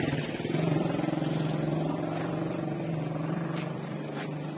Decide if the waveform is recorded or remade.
remade